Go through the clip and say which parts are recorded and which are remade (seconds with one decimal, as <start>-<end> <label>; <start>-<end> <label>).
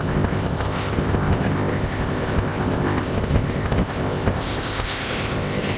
0.0-5.8 remade